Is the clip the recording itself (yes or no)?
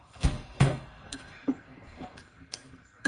no